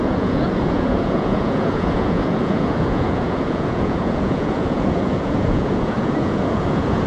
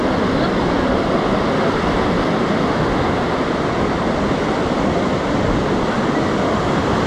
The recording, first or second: second